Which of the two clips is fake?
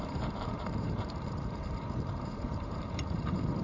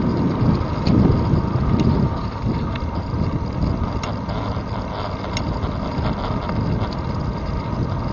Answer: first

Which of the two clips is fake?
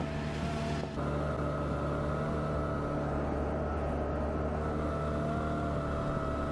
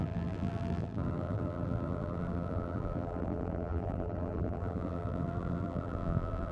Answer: second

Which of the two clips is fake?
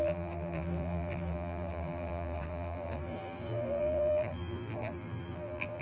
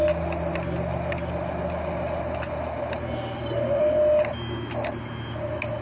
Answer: first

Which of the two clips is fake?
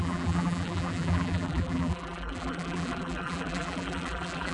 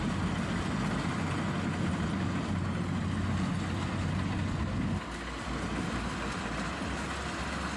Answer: first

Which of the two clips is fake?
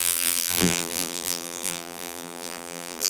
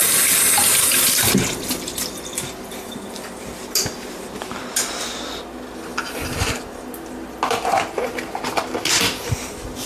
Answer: first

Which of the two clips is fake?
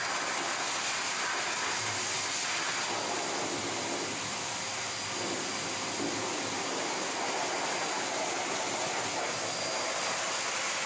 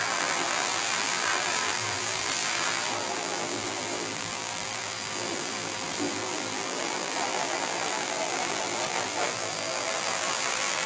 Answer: second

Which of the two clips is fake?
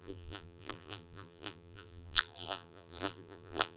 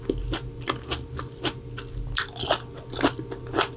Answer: first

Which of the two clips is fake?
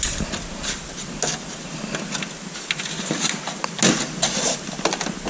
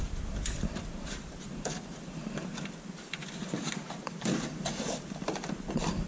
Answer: second